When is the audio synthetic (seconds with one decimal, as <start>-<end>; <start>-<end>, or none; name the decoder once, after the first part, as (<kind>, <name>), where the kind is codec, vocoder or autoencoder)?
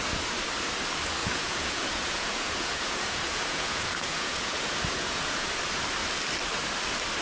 1.2-5.5 (vocoder, Vocos)